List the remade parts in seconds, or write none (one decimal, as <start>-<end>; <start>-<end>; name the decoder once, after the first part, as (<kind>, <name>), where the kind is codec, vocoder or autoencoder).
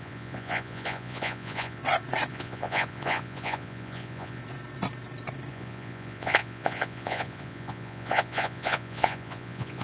0.0-1.8 (vocoder, Vocos); 2.3-4.4; 5.5-9.8